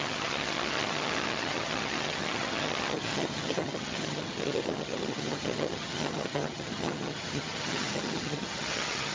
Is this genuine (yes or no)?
no